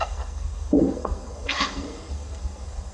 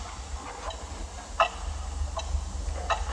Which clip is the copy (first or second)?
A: first